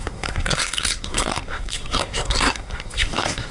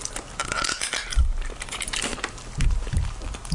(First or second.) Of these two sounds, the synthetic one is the first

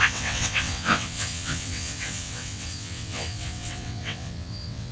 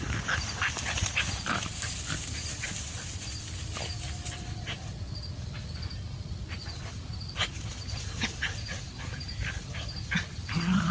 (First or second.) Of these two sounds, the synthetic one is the first